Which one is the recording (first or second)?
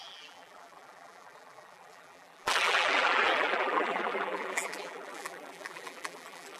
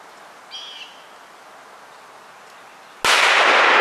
second